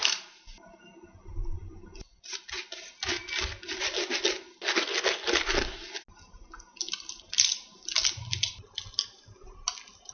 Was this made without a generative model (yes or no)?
yes